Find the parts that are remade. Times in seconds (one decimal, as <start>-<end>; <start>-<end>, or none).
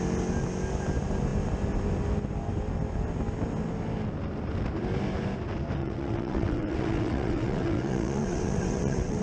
5.8-9.2